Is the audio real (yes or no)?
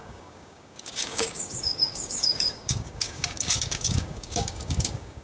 no